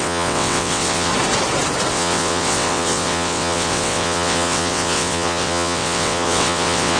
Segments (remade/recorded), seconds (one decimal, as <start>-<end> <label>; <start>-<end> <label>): 0.0-1.1 remade; 1.1-1.9 recorded; 1.9-7.0 remade